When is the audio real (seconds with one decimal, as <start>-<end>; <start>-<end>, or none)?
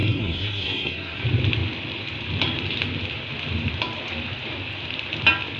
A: 1.2-5.6